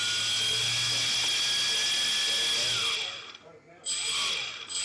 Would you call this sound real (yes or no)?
yes